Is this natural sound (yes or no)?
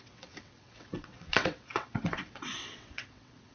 no